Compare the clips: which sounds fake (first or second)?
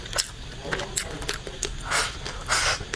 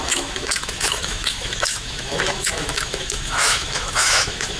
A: second